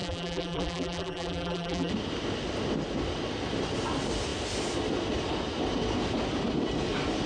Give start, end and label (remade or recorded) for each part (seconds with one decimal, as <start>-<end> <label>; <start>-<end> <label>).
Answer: 0.0-1.9 remade; 1.9-7.3 recorded